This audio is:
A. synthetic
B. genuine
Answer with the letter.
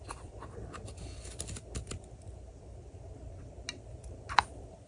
B